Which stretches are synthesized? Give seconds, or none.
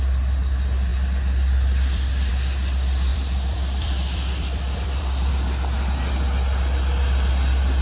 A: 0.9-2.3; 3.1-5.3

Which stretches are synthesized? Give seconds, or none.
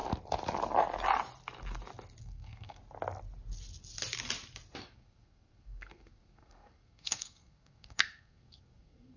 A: 2.2-2.8; 4.8-9.2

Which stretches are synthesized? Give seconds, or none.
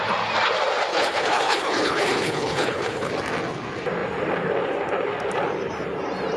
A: 0.9-3.1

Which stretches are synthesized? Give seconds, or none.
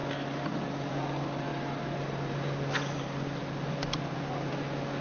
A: none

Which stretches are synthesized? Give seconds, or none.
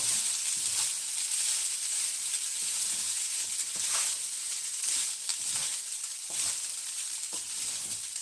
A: 2.6-4.8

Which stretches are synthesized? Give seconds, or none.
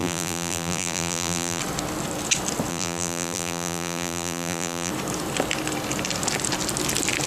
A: 0.0-1.6; 2.7-4.9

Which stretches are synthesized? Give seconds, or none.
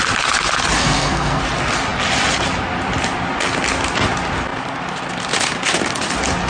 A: 0.8-1.4